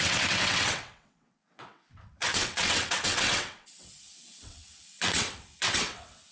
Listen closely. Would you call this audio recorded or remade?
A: remade